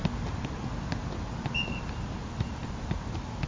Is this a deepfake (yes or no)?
no